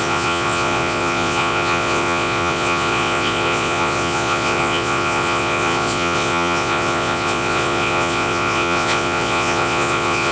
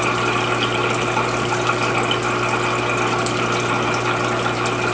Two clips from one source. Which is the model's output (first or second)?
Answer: first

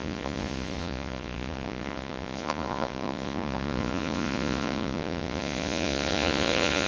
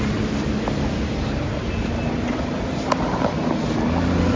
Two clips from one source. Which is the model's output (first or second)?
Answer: first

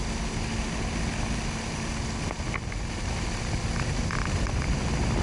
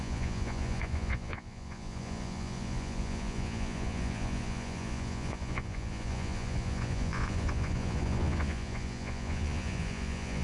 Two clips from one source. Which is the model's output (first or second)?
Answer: second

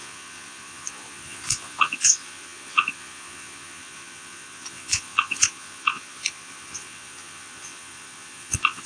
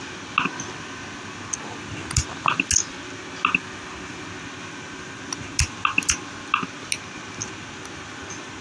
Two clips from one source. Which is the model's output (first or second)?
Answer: first